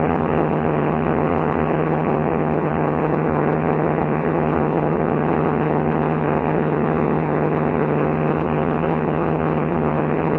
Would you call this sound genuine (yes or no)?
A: no